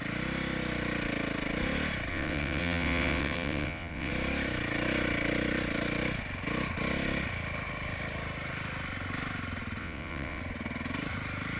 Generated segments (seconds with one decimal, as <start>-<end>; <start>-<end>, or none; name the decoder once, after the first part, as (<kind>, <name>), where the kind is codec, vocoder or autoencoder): 2.1-4.1 (vocoder, WaveNeXt); 9.8-10.4